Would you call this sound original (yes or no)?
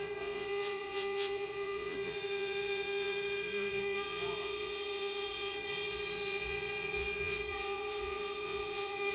no